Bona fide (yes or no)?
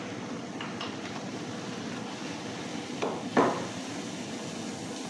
yes